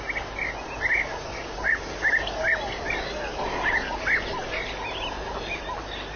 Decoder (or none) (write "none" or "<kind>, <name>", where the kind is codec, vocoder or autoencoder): none